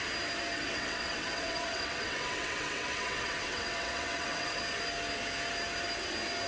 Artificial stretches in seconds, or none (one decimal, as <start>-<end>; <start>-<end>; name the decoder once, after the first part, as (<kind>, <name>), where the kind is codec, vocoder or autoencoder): 0.7-4.6 (vocoder, WaveNeXt)